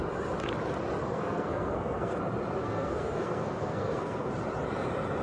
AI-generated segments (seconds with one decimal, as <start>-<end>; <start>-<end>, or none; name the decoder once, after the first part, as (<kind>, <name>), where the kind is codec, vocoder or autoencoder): 1.0-2.2 (codec, SNAC); 2.6-4.3